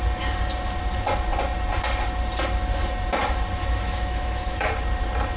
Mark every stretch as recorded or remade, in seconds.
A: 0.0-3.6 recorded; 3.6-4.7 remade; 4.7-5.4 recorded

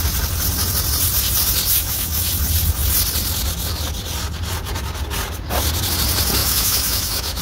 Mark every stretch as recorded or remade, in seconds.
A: 0.0-1.7 recorded; 1.7-2.3 remade; 2.3-6.4 recorded; 6.4-7.4 remade

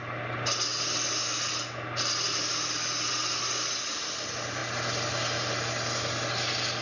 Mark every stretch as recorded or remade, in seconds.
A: 0.0-6.8 recorded

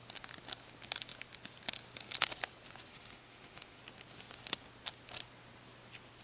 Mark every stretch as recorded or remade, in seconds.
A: 0.0-2.9 recorded; 2.9-3.8 remade; 3.8-6.2 recorded

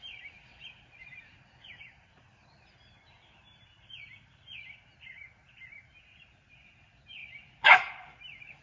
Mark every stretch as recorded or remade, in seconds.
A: 0.0-8.6 recorded

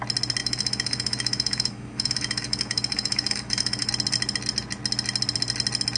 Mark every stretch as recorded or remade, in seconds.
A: 0.0-0.4 recorded; 0.4-3.9 remade; 3.9-6.0 recorded

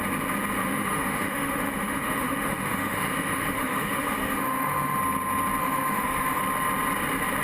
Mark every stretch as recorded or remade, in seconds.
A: 0.0-0.6 recorded; 0.6-5.0 remade; 5.0-5.6 recorded; 5.6-6.4 remade; 6.4-7.4 recorded

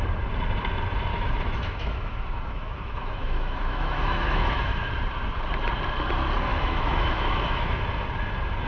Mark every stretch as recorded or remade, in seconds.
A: 0.0-1.1 recorded; 1.1-4.9 remade; 4.9-6.5 recorded; 6.5-7.8 remade; 7.8-8.7 recorded